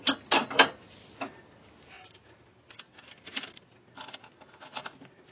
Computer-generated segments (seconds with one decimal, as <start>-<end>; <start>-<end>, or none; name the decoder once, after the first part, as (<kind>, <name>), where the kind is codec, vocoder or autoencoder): none